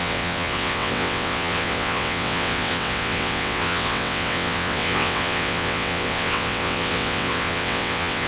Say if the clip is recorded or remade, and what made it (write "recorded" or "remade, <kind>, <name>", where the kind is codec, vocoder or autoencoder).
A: remade, vocoder, WaveNeXt